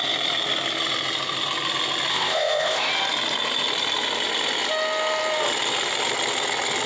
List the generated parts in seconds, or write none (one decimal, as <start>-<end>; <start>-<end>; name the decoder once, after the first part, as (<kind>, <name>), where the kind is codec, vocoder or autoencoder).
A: 2.1-2.9 (codec, ZipCodec)